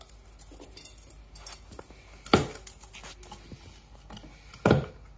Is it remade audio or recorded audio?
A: recorded